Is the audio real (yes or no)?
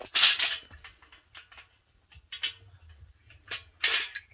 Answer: yes